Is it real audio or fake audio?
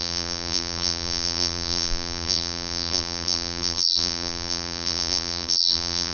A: fake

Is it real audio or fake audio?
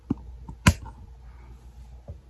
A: real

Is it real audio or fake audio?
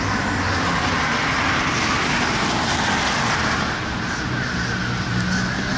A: real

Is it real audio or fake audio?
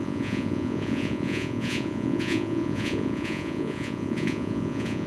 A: fake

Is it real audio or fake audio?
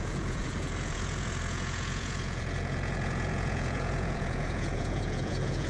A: fake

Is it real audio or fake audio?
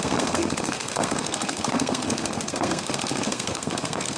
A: fake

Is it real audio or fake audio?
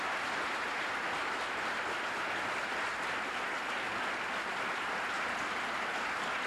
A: real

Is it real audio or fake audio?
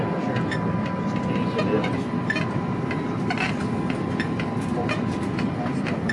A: real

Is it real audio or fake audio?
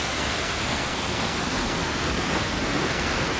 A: fake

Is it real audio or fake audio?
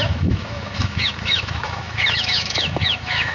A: fake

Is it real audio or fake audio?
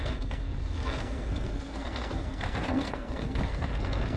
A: fake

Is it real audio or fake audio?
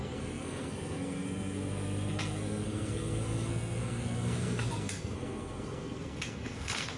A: fake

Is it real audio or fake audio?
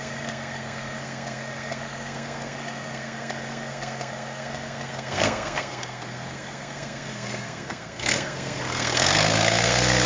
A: fake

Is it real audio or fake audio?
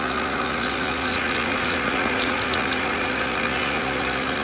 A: fake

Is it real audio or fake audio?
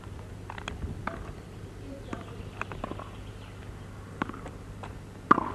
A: real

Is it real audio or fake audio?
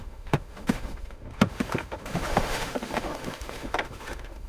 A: fake